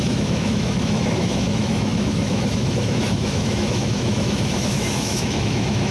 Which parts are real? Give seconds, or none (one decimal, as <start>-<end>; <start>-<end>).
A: none